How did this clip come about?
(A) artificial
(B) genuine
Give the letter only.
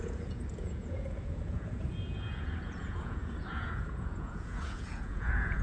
A